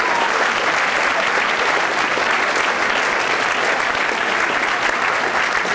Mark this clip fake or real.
real